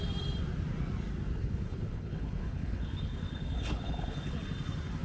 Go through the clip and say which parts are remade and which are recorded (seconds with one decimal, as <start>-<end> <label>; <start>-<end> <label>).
0.0-1.4 recorded; 1.4-4.4 remade; 4.4-5.0 recorded

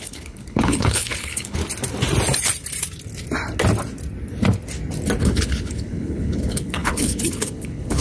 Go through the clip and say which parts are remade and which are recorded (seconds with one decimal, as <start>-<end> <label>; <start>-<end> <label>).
0.0-1.6 remade; 1.6-5.2 recorded; 5.2-8.0 remade

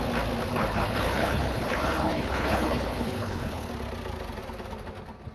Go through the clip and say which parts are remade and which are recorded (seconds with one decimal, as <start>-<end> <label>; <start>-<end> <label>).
0.0-0.5 recorded; 0.5-3.7 remade; 3.7-5.3 recorded

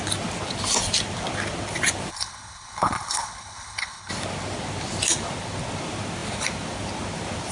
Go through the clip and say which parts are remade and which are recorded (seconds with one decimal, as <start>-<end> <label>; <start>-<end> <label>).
0.0-2.1 recorded; 2.1-4.1 remade; 4.1-7.5 recorded

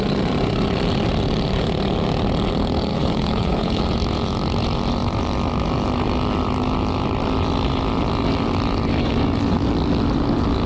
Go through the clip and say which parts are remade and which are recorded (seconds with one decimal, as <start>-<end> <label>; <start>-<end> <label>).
0.0-2.9 recorded; 2.9-3.8 remade; 3.8-10.7 recorded

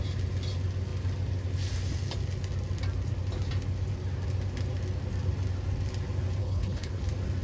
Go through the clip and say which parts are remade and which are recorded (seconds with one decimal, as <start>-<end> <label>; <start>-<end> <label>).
0.0-6.4 recorded; 6.4-7.0 remade; 7.0-7.4 recorded

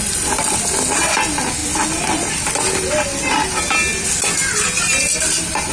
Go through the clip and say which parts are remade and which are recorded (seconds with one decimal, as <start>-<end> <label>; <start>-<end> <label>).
0.0-5.7 recorded

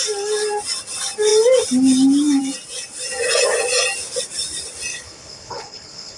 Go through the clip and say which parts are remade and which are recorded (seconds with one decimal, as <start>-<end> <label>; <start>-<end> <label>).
0.0-4.9 recorded; 4.9-6.2 remade